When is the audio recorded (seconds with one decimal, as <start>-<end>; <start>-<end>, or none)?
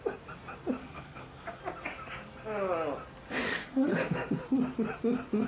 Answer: 0.0-0.8; 1.6-3.6; 4.4-5.5